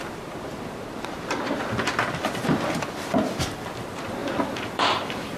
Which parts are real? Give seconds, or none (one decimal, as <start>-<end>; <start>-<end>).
none